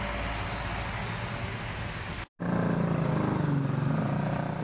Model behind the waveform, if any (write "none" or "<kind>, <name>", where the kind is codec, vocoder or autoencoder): none